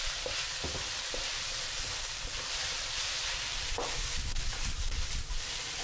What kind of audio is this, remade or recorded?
remade